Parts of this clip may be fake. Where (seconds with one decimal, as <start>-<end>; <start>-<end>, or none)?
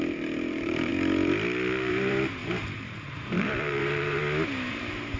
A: 0.0-0.9; 1.9-4.2; 4.7-5.2